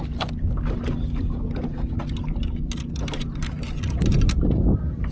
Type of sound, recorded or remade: recorded